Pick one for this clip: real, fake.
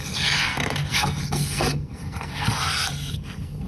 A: fake